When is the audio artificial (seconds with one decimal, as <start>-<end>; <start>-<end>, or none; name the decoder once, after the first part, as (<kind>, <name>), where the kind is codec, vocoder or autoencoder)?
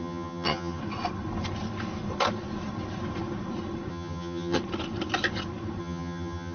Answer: 0.0-0.8 (vocoder, HiFi-GAN); 3.9-4.6; 5.8-6.5